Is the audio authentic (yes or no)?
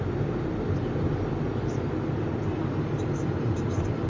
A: yes